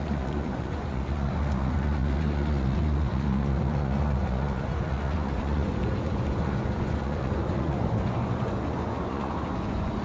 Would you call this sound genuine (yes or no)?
no